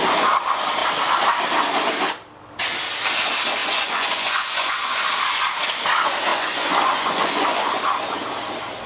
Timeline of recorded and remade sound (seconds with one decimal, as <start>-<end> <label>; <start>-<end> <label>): 0.0-3.6 recorded; 3.6-5.0 remade; 5.0-6.3 recorded; 6.3-7.7 remade; 7.7-8.9 recorded